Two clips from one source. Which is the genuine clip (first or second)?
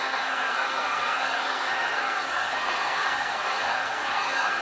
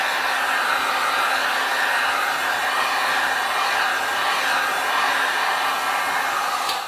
second